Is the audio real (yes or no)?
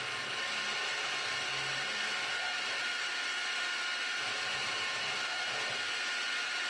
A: yes